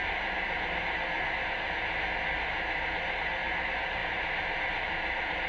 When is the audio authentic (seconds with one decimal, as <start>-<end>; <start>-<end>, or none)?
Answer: 0.0-4.0